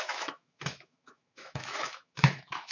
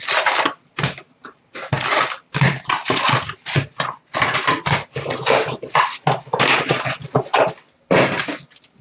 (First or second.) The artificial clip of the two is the first